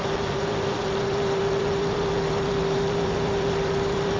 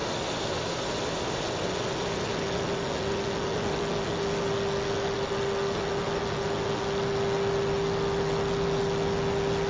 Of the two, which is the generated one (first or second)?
first